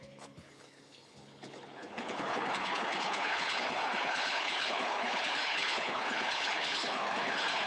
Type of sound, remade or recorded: remade